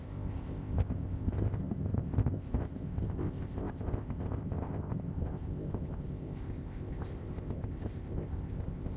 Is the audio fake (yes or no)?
yes